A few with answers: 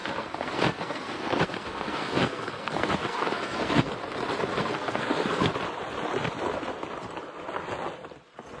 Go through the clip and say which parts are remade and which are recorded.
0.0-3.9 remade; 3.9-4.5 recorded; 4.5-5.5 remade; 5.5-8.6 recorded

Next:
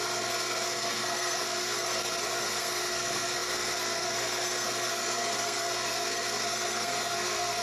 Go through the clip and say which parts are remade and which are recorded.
0.0-7.6 remade

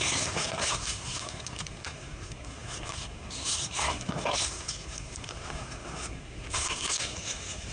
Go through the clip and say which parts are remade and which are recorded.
0.0-7.7 remade